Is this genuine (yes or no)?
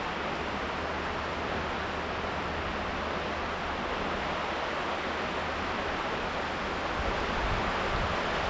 yes